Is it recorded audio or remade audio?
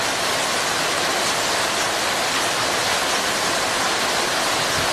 recorded